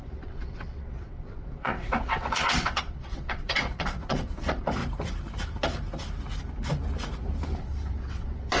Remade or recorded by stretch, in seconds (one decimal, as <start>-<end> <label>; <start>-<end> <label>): 0.0-4.8 remade; 4.8-7.6 recorded; 7.6-8.6 remade